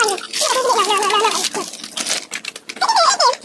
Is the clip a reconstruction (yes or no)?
no